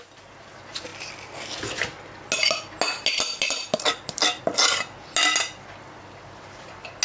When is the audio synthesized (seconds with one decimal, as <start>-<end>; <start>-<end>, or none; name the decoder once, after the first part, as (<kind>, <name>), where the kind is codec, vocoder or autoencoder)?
none